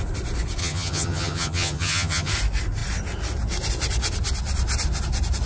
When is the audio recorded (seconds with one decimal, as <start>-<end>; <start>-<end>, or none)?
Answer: 0.0-0.6; 2.3-5.5